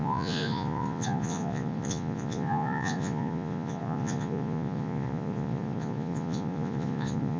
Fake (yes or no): yes